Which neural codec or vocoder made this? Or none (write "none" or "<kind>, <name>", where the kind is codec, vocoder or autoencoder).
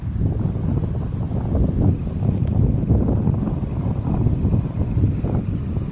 none